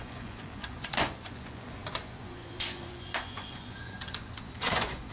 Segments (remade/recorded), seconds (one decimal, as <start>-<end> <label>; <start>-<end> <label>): 0.0-5.1 remade